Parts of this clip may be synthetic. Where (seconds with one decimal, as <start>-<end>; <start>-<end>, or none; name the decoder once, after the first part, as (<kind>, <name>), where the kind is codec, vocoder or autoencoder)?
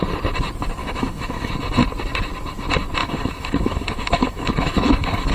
0.8-1.5 (autoencoder, DAC-VAE); 3.0-5.3